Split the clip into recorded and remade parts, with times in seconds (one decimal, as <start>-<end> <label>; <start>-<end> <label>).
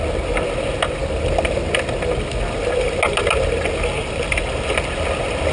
0.0-5.5 recorded